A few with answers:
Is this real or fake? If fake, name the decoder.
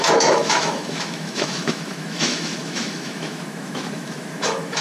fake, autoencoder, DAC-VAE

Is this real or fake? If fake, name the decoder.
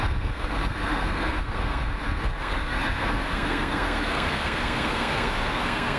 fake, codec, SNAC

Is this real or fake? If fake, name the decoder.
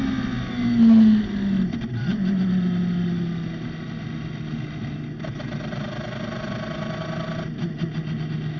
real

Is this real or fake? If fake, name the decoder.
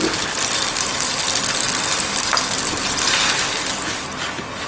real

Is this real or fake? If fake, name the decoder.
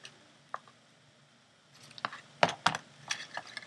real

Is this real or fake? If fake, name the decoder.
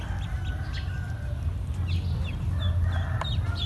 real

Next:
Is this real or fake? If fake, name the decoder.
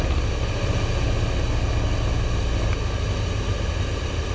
real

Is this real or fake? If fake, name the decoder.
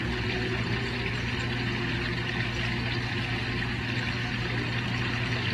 real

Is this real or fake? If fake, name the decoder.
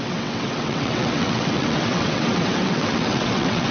fake, vocoder, WaveNeXt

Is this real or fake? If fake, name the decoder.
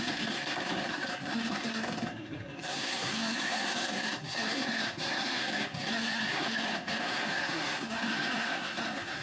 fake, codec, SNAC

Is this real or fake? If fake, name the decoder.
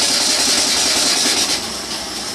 real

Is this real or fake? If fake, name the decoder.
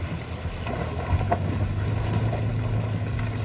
real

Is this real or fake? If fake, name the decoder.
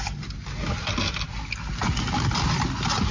real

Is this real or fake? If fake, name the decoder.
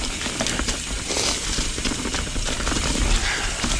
real